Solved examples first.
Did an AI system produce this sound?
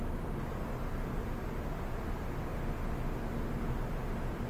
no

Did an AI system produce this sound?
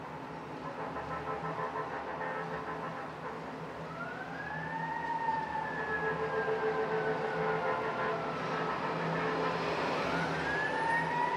no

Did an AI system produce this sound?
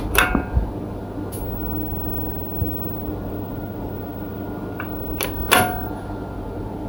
no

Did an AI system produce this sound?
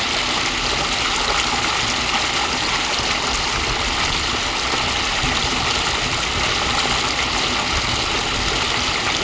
no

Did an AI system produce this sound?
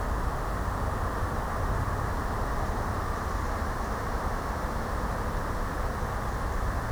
no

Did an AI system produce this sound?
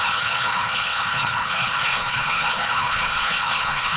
yes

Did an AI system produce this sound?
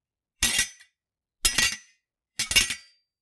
no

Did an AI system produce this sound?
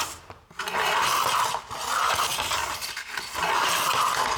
no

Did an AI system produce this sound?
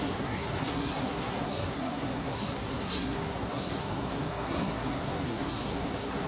yes